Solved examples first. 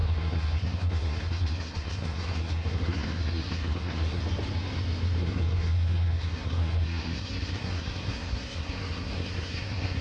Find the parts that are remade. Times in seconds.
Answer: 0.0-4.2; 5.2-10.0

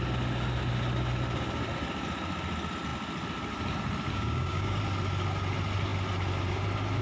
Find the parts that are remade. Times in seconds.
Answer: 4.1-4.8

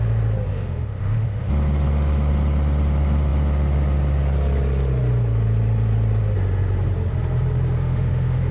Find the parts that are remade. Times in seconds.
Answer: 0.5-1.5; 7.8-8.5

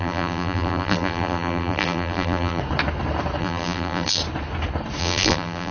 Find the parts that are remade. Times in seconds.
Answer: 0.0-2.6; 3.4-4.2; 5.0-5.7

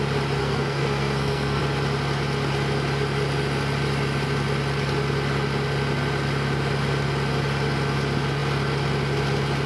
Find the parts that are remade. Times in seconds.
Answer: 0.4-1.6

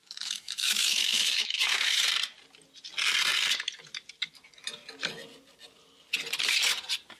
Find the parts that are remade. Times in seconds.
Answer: 0.0-2.0

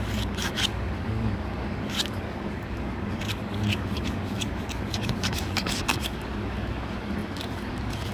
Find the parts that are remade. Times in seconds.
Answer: 0.0-8.1

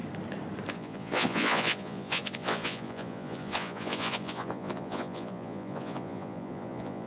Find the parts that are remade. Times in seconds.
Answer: 0.7-7.1